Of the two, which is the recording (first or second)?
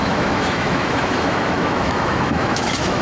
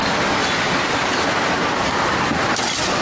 second